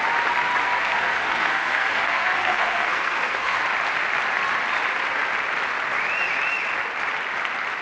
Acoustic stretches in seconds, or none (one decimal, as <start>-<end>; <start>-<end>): 0.0-0.6; 3.6-7.8

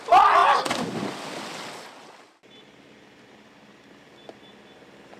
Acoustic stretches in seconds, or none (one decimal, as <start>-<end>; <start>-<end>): 0.0-5.2